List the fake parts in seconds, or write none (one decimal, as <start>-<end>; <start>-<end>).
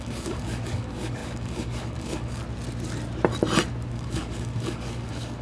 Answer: 0.0-2.4; 3.9-5.4